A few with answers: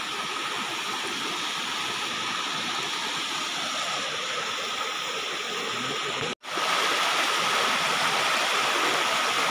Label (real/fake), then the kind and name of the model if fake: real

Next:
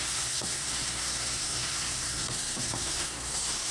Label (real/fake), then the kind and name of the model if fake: fake, codec, SNAC